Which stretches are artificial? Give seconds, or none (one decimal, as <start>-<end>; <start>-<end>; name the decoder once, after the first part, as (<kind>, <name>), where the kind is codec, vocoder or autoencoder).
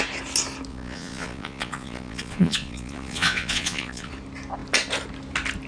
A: 0.7-4.1 (vocoder, Vocos)